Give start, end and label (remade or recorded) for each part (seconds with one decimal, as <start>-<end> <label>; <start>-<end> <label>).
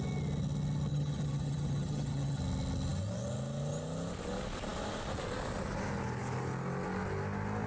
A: 0.0-0.9 recorded; 0.9-2.4 remade; 2.4-7.7 recorded